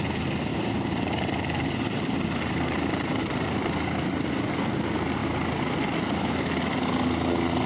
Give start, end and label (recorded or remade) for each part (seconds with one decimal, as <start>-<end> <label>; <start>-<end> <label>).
0.0-0.5 recorded; 0.5-4.3 remade; 4.3-7.7 recorded